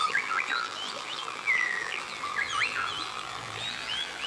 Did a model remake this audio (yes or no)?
yes